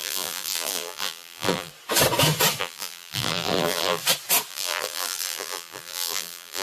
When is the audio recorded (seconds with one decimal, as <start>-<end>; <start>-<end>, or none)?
1.7-2.6; 4.0-4.5